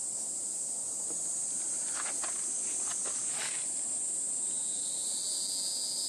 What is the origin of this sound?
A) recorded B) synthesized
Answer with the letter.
A